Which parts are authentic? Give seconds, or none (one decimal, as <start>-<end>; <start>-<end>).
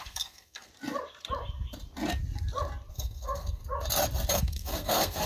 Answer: 0.7-2.9; 3.6-4.3